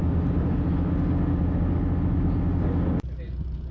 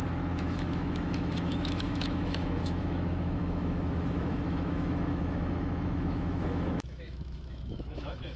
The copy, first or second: second